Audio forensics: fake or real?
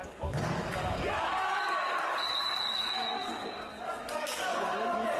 fake